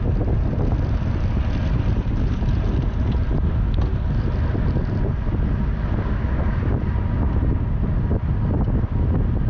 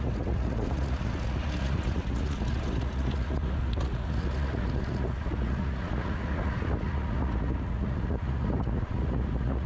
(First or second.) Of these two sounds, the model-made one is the second